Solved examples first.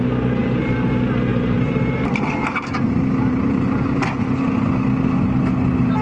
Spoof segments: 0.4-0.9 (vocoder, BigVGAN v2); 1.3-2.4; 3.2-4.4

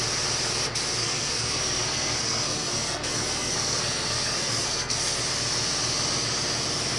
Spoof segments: 1.0-5.2 (codec, SNAC)